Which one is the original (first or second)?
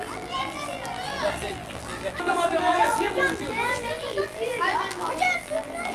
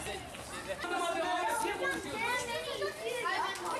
second